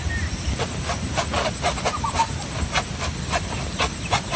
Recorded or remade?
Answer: recorded